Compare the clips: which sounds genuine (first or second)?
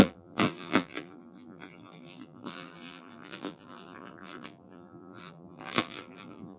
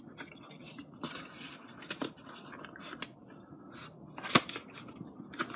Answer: second